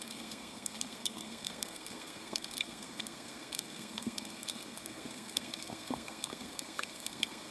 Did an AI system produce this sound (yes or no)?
yes